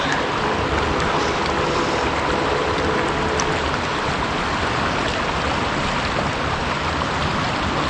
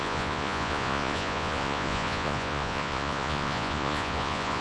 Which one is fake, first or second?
second